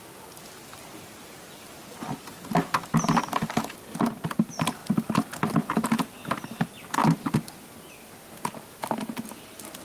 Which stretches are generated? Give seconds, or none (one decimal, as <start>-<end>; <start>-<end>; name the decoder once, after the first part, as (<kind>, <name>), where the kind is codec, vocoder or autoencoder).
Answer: none